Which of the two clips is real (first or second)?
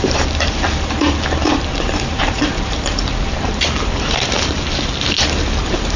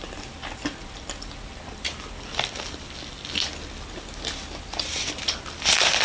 second